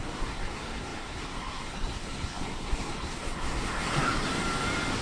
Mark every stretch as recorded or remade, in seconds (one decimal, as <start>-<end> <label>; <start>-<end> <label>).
0.0-4.3 remade; 4.3-5.0 recorded